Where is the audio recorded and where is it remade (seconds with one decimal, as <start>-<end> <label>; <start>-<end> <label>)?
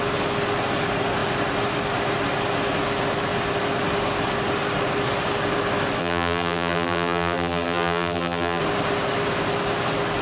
0.0-6.0 recorded; 6.0-8.6 remade; 8.6-10.2 recorded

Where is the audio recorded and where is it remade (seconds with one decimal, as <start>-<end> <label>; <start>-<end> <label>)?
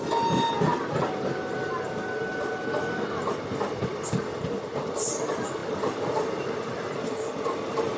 0.0-8.0 recorded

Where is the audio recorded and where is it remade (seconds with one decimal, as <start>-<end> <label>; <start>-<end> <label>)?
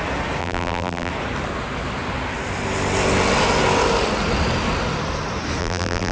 0.0-0.4 recorded; 0.4-1.1 remade; 1.1-5.6 recorded; 5.6-6.1 remade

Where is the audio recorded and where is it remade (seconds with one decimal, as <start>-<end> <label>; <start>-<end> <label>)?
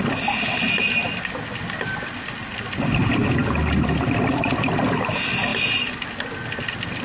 0.0-7.0 recorded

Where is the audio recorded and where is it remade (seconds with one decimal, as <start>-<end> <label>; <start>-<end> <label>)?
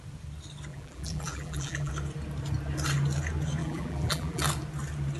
0.0-0.7 recorded; 0.7-1.9 remade; 1.9-3.6 recorded; 3.6-4.4 remade; 4.4-5.2 recorded